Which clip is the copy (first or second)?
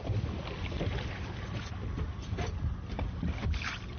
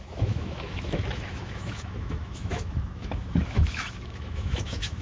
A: second